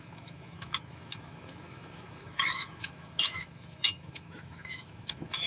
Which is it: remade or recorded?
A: remade